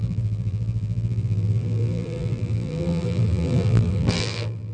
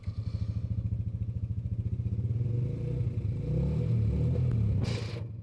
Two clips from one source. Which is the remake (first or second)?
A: first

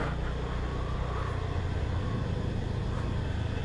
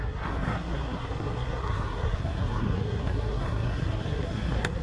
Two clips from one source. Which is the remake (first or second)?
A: second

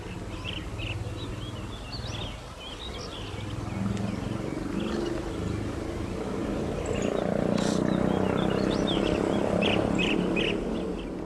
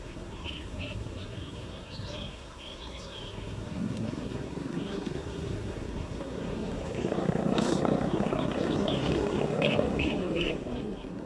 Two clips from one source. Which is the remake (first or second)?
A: second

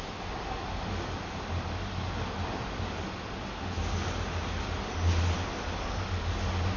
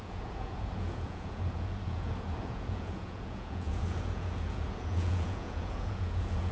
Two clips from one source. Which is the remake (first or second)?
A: second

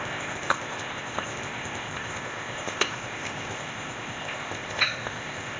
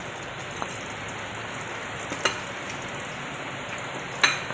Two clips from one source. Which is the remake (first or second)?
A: first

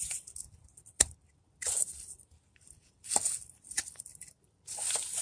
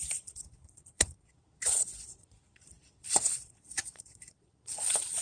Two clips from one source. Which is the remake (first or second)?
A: second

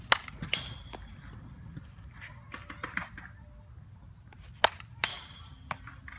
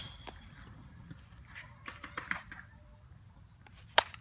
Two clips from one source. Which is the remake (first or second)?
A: second